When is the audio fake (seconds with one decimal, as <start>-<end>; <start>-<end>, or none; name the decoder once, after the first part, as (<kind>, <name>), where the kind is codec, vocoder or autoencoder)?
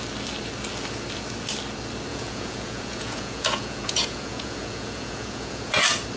2.1-5.8 (vocoder, Vocos)